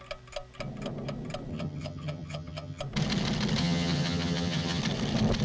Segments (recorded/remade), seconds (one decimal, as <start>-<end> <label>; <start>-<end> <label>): 0.0-1.5 recorded; 1.5-2.8 remade; 2.8-3.6 recorded; 3.6-4.8 remade; 4.8-5.4 recorded